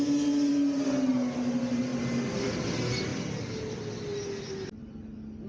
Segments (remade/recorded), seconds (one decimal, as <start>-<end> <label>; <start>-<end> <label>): 0.0-5.5 recorded